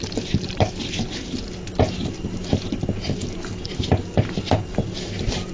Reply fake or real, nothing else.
real